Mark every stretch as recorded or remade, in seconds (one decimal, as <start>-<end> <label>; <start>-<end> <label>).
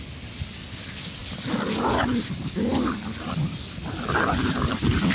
0.0-5.1 recorded